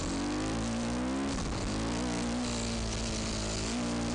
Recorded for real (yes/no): yes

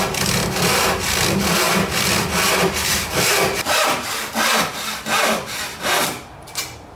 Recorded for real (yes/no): yes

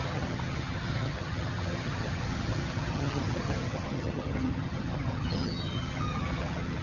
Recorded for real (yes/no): no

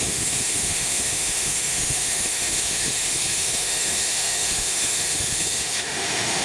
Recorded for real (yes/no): no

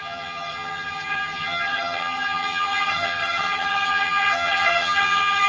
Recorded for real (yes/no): no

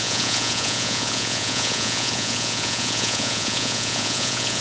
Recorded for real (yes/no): no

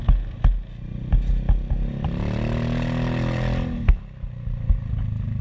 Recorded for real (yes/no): yes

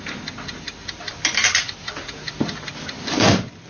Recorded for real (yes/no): yes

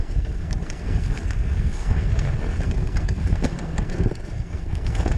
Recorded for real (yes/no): no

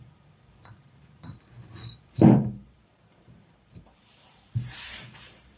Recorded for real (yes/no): no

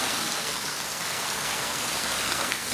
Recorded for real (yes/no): no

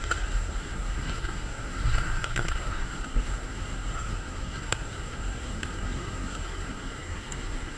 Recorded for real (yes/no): no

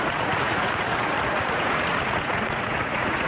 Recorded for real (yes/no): no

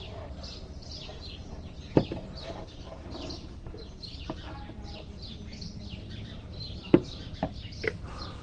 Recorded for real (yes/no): yes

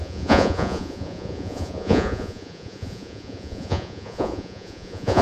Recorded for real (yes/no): no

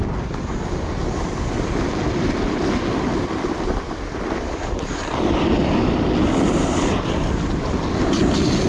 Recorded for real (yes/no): yes